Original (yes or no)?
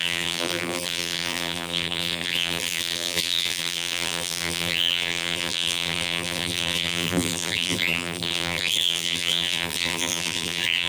no